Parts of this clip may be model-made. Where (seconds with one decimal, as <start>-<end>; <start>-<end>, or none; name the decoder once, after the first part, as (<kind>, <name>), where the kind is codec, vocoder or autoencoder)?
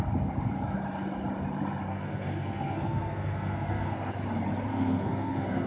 1.9-4.1 (codec, SNAC); 4.7-5.7